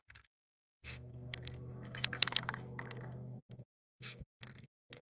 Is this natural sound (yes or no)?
no